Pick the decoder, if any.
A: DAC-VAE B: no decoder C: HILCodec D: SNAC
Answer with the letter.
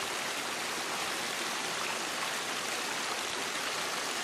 B